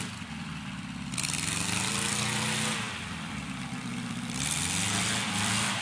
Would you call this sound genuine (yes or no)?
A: no